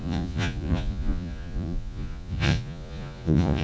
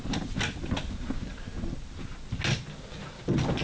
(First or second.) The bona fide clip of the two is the second